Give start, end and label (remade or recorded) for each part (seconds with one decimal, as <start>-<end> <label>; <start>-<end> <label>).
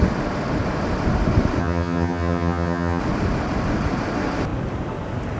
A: 0.0-1.6 recorded; 1.6-3.0 remade; 3.0-5.4 recorded